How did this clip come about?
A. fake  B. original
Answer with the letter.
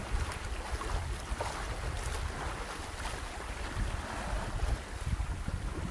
B